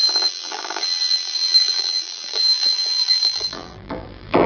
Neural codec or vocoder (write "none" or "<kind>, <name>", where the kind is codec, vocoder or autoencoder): vocoder, BigVGAN v2